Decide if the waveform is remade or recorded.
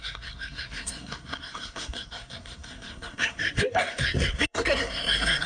remade